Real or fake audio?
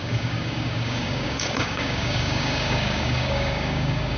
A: fake